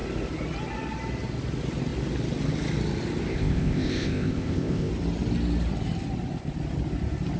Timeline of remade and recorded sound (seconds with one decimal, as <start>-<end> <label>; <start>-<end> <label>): 0.0-3.3 recorded; 3.3-4.9 remade; 4.9-7.4 recorded